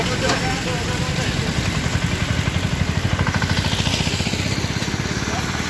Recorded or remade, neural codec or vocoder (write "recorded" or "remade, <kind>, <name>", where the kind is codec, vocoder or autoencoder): recorded